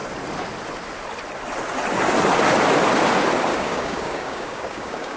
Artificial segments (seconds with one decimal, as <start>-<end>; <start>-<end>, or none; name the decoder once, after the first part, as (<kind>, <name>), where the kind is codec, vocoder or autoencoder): 3.5-5.2 (codec, DAC)